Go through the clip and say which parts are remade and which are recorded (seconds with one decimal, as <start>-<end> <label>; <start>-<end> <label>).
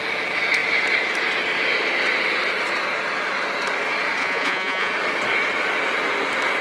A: 0.0-4.2 recorded; 4.2-4.9 remade; 4.9-6.6 recorded